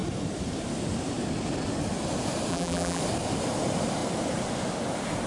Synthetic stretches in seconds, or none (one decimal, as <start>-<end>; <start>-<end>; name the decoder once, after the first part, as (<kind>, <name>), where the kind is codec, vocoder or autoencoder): 2.5-3.0 (vocoder, BigVGAN v2)

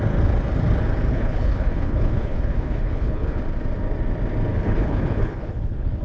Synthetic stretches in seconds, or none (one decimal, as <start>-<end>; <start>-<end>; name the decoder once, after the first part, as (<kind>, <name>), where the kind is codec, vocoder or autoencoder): 1.1-3.4 (codec, HILCodec); 4.5-6.0

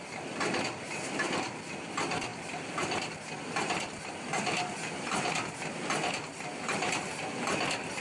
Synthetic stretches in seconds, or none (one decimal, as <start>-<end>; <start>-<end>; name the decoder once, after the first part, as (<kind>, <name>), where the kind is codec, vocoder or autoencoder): none

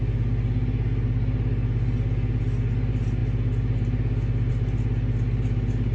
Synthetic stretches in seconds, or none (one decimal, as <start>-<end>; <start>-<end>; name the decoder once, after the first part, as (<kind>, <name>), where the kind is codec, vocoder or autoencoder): none

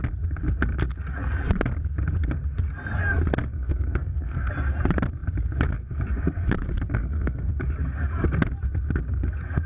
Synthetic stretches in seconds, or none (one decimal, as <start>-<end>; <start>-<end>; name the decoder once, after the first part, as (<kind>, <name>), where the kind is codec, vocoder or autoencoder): 3.5-4.5 (codec, SNAC); 7.0-7.5

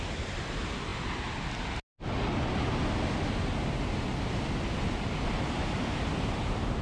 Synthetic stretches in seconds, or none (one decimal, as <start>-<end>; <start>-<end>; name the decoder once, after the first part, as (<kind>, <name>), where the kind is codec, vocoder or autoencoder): none